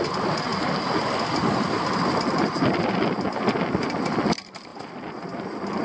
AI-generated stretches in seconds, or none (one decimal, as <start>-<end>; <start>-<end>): none